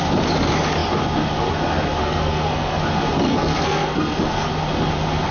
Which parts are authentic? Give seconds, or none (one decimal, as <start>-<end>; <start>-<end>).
0.0-2.0; 2.8-3.3; 4.5-5.3